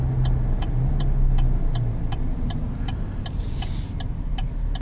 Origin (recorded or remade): recorded